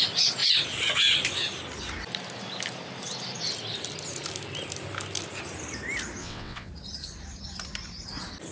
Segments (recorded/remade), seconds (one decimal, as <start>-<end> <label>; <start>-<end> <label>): 0.0-6.2 recorded; 6.2-6.7 remade; 6.7-8.5 recorded